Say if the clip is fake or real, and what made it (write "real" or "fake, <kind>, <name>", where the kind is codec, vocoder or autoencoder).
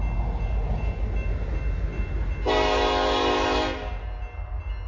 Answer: real